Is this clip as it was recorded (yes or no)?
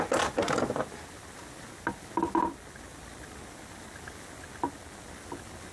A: yes